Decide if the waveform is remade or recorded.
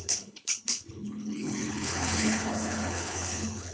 remade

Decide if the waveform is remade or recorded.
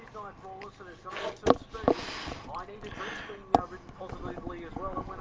recorded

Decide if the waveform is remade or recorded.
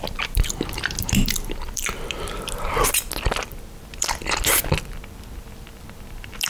remade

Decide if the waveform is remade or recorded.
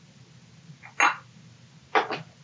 recorded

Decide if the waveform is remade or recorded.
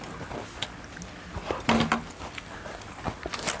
recorded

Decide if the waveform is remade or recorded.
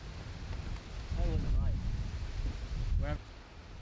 recorded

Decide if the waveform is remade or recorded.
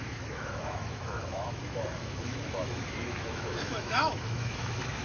remade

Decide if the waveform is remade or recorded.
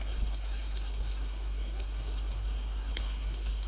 remade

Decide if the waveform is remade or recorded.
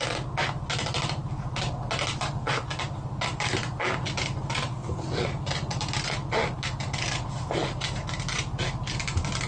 recorded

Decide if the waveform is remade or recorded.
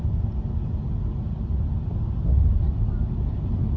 recorded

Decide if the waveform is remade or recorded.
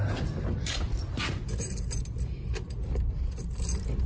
recorded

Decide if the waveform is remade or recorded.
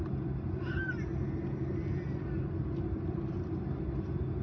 recorded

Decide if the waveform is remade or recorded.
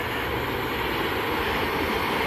recorded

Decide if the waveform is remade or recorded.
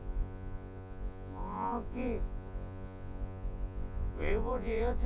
remade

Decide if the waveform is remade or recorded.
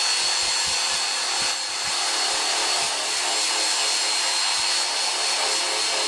recorded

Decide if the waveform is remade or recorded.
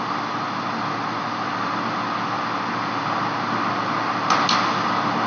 recorded